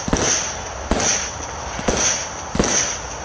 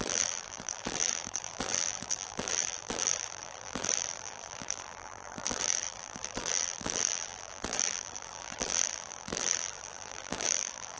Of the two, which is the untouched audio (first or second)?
first